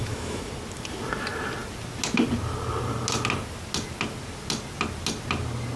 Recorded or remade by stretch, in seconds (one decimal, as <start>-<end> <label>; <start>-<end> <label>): 0.0-0.5 remade; 0.5-5.8 recorded

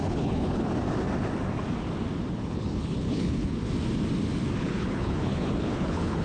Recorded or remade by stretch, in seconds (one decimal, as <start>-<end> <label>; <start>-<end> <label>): 0.0-0.7 remade; 0.7-2.3 recorded; 2.3-3.6 remade; 3.6-4.6 recorded; 4.6-6.2 remade

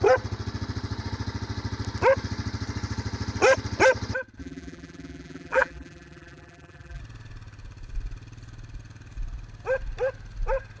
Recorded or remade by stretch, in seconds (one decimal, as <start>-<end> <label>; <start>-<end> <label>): 0.0-4.4 recorded; 4.4-7.0 remade; 7.0-10.8 recorded

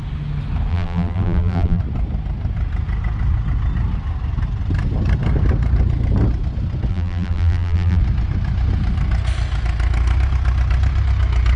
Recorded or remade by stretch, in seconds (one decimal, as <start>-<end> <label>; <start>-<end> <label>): 0.0-0.7 recorded; 0.7-1.8 remade; 1.8-6.9 recorded; 6.9-8.0 remade; 8.0-11.6 recorded

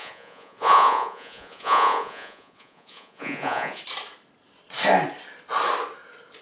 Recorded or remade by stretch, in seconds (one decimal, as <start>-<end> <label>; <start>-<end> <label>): 0.0-3.8 remade; 3.8-6.4 recorded

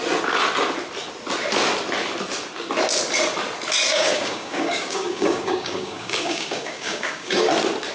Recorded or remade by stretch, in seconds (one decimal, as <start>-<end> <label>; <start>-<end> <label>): 0.0-3.9 recorded; 3.9-7.5 remade; 7.5-7.9 recorded